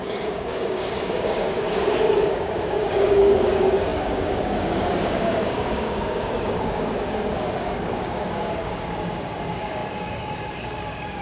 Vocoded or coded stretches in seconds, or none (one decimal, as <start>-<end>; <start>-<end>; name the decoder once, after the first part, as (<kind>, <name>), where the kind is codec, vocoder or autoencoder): 0.0-11.2 (codec, DAC)